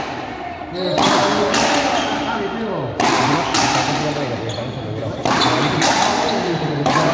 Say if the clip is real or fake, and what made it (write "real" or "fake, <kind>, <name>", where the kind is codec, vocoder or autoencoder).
real